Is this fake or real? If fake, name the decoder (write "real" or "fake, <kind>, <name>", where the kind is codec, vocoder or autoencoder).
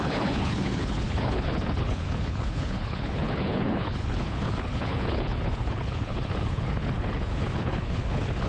fake, codec, HILCodec